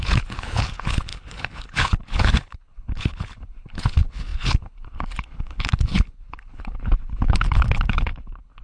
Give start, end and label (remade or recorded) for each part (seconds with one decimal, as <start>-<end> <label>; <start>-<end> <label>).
0.0-8.6 remade